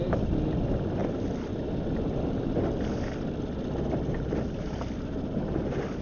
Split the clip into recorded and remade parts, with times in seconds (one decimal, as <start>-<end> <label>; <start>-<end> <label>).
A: 0.0-6.0 recorded

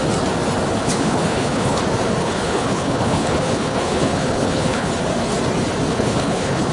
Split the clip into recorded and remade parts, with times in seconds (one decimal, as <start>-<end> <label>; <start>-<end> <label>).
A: 0.0-0.8 recorded; 0.8-1.8 remade; 1.8-2.2 recorded; 2.2-4.9 remade; 4.9-5.9 recorded; 5.9-6.7 remade